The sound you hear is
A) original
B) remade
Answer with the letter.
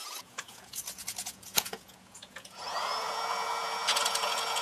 B